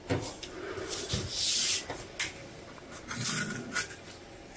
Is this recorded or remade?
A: recorded